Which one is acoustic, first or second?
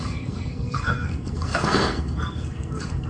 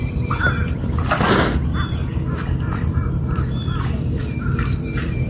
second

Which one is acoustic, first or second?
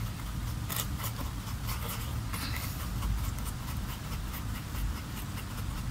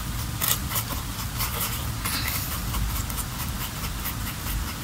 first